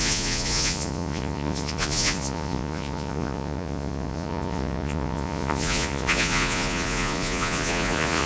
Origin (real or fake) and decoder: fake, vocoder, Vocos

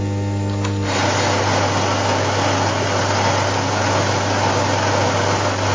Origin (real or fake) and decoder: real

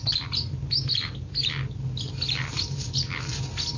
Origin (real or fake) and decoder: real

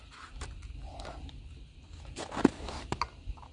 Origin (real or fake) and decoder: real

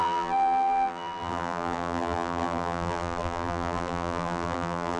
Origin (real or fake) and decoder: fake, vocoder, BigVGAN v2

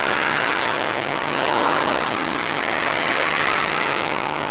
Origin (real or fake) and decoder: fake, vocoder, HiFi-GAN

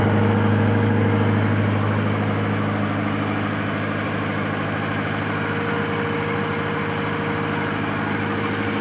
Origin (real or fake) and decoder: real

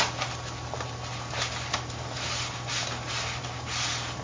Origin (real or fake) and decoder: real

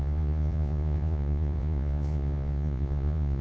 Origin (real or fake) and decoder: fake, vocoder, Vocos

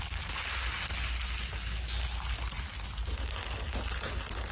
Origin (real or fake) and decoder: real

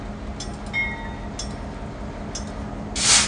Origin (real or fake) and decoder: real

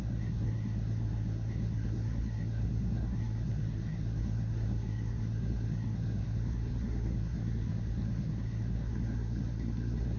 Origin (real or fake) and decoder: fake, codec, SNAC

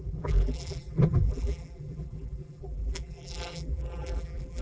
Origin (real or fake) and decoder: fake, vocoder, BigVGAN v2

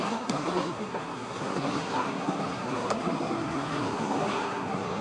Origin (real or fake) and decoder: fake, codec, SNAC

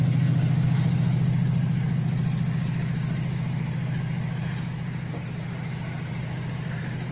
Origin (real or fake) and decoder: real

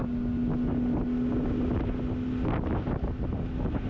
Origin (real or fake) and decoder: real